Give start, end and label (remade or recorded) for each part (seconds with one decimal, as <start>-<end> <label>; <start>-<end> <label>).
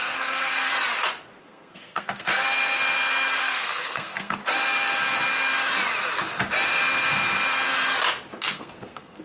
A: 0.0-0.7 remade; 0.7-1.4 recorded; 1.4-2.3 remade; 2.3-3.4 recorded; 3.4-4.4 remade; 4.4-8.5 recorded; 8.5-9.2 remade